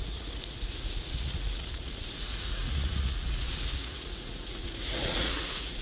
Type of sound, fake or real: fake